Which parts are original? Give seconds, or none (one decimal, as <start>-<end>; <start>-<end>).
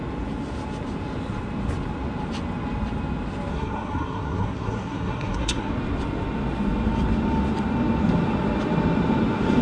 0.0-3.5; 5.7-9.6